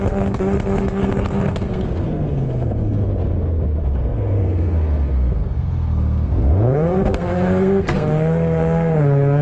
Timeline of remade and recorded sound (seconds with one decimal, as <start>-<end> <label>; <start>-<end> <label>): 0.0-3.1 remade; 3.1-3.8 recorded; 3.8-9.4 remade